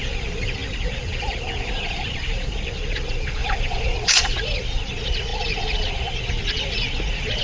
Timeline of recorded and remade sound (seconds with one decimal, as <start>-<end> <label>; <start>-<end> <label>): 0.0-7.4 remade